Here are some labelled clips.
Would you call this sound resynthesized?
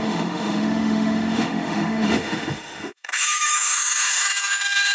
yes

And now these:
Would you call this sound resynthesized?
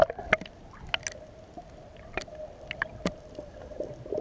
no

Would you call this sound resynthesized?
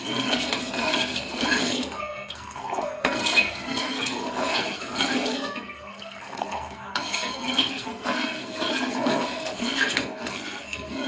yes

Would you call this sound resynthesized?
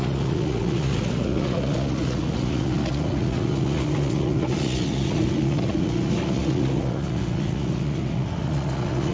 yes